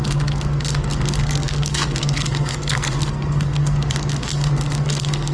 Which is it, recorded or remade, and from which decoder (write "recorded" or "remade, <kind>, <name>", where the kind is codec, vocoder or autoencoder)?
remade, codec, SNAC